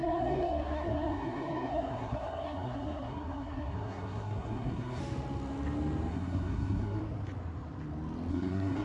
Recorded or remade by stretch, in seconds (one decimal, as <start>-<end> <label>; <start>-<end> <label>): 0.0-5.0 remade; 5.0-6.1 recorded; 6.1-7.0 remade; 7.0-8.3 recorded; 8.3-8.8 remade